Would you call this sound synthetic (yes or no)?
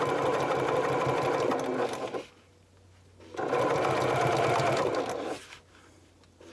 no